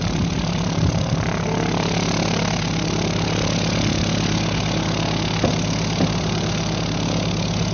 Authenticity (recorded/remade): recorded